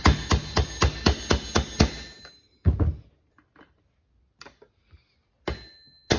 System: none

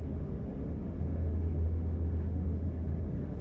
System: autoencoder, DAC-VAE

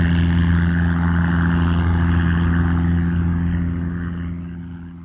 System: none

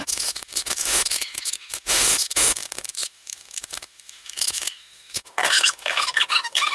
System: autoencoder, DAC-VAE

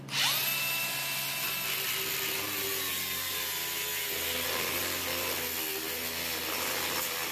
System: none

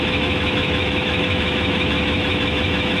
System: autoencoder, DAC-VAE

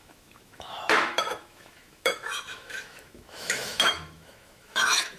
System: autoencoder, DAC-VAE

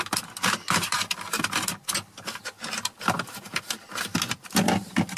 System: none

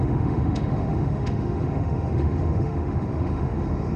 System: autoencoder, DAC-VAE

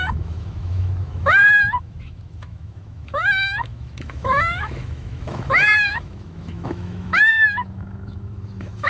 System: autoencoder, DAC-VAE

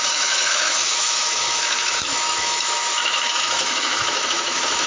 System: autoencoder, DAC-VAE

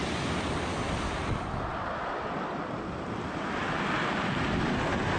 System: none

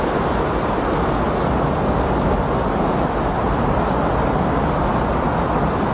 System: none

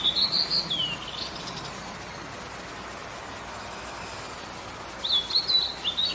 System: none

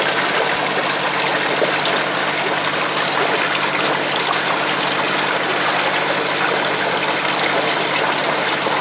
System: none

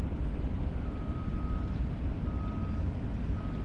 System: none